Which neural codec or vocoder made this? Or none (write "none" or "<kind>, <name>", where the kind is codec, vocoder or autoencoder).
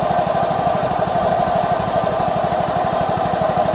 vocoder, BigVGAN v2